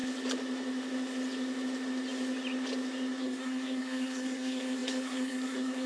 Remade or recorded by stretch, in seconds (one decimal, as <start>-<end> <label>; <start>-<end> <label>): 0.0-3.2 recorded; 3.2-5.9 remade